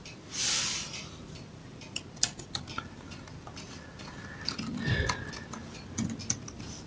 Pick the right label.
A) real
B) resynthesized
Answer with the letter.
A